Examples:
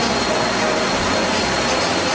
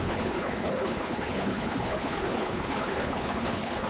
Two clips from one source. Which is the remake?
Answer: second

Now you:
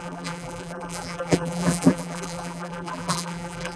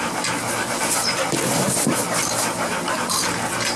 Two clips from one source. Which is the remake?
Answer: first